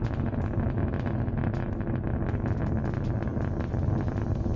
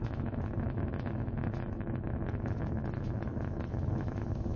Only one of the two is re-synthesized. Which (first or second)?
second